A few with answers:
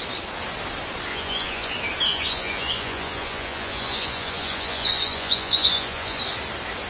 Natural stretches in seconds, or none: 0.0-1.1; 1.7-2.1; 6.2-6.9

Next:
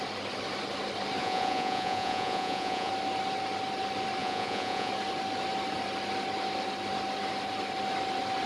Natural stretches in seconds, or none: 0.0-1.2; 2.9-4.2; 4.9-8.5

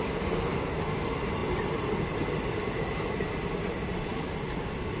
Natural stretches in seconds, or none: 0.0-5.0

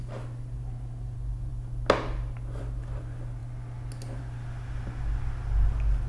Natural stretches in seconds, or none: 0.0-6.1

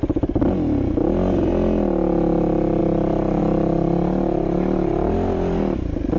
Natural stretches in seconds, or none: 0.0-6.2